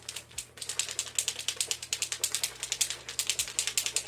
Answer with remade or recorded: recorded